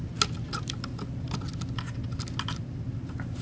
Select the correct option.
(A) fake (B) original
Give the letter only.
B